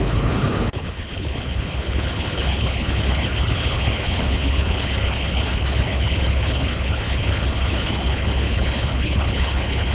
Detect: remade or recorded remade